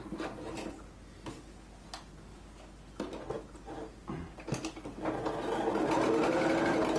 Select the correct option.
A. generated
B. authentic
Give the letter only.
B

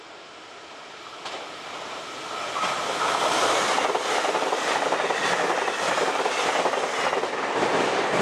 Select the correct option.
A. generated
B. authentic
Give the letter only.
B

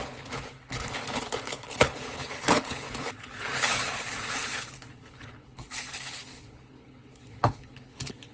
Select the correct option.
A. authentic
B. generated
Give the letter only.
B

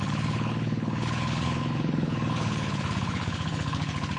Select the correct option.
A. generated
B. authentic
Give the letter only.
A